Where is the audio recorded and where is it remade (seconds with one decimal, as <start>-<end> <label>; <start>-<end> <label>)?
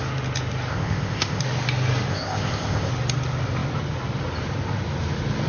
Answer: 0.0-0.7 recorded; 0.7-1.4 remade; 1.4-2.1 recorded; 2.1-2.9 remade; 2.9-5.5 recorded